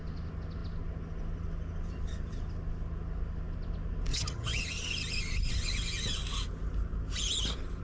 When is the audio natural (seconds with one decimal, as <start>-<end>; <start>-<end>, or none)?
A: 0.0-4.1; 4.6-7.8